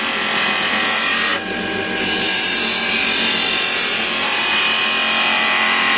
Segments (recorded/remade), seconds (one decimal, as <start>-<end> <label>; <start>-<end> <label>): 0.0-6.0 recorded

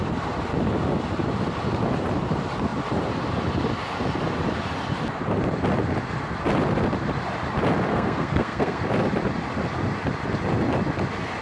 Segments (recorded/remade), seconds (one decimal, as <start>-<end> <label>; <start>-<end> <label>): 0.0-7.9 recorded; 7.9-8.8 remade; 8.8-11.4 recorded

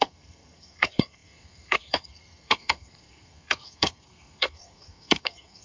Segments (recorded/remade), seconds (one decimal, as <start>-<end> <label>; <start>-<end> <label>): 0.0-5.6 remade

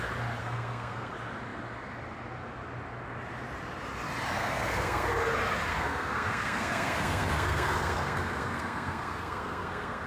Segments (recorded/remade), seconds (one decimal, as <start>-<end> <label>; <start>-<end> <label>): 0.0-0.4 recorded; 0.4-1.1 remade; 1.1-4.4 recorded; 4.4-5.1 remade; 5.1-5.7 recorded; 5.7-10.1 remade

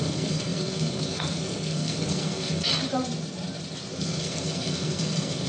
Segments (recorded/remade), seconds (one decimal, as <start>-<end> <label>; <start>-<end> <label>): 0.0-2.7 remade; 2.7-4.0 recorded; 4.0-5.5 remade

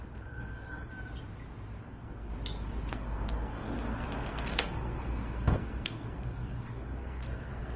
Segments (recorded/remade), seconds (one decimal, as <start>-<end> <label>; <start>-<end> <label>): 0.0-0.9 remade; 0.9-1.8 recorded; 1.8-2.3 remade; 2.3-2.9 recorded; 2.9-7.8 remade